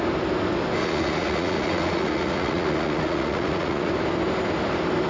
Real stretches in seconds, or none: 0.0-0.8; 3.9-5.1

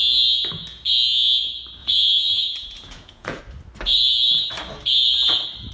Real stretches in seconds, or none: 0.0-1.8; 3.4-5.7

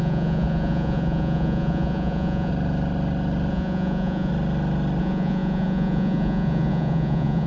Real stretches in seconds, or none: 2.5-3.5; 4.3-5.0

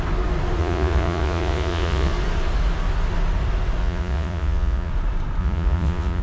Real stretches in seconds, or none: 0.0-0.6; 2.1-3.8; 4.9-5.4

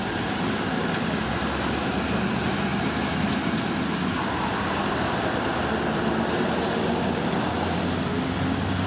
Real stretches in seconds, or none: 0.0-8.9